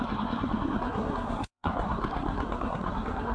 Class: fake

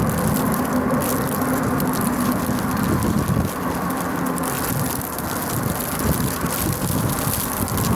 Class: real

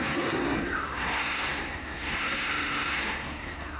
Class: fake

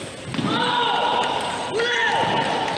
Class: real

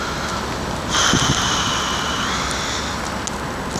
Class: real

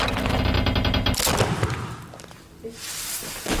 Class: real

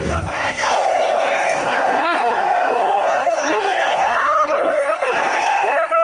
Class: fake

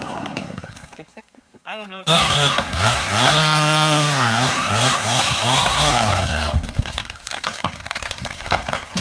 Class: fake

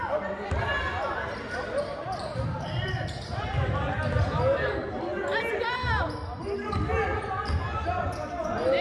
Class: real